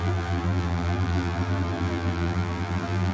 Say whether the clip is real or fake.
fake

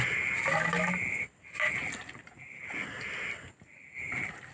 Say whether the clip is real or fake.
real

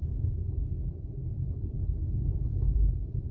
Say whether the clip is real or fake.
fake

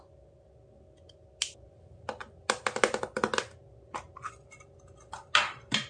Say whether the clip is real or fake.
real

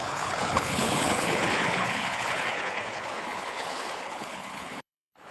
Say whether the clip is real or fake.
fake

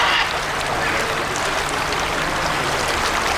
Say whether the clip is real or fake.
real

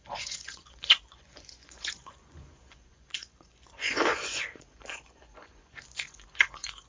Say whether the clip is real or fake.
fake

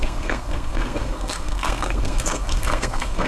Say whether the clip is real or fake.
fake